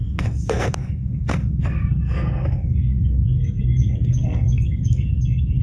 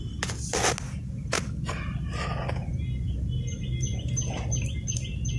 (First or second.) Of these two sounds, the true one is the second